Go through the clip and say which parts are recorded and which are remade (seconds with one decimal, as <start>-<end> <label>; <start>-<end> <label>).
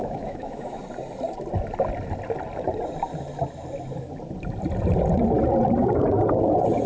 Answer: 0.0-0.8 remade; 0.8-6.9 recorded